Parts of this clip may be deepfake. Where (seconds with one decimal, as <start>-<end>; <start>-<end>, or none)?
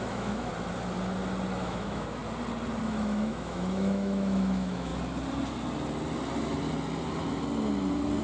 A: 0.0-0.5; 1.6-2.2; 2.8-4.9